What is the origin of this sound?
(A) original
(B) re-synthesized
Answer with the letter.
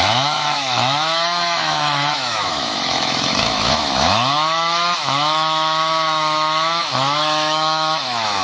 B